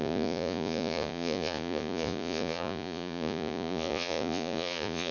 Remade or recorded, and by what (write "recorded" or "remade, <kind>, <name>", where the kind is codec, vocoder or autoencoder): remade, vocoder, Vocos